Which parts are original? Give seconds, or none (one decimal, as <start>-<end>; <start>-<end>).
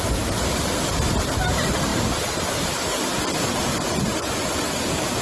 0.0-5.2